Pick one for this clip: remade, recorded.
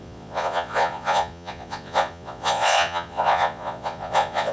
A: remade